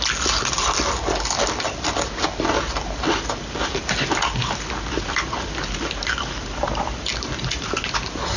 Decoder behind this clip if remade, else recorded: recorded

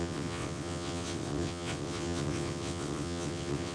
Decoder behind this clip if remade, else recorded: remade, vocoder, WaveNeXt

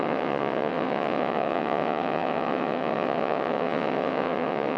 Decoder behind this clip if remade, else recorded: remade, vocoder, WaveNeXt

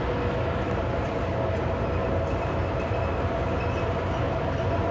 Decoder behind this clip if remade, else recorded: recorded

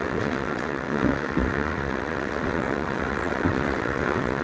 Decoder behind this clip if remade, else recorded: remade, vocoder, WaveNeXt